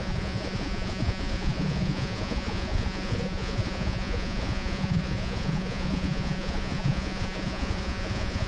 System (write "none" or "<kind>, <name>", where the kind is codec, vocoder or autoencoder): vocoder, Vocos